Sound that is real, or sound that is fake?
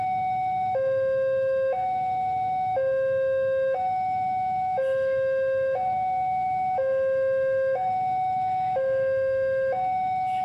fake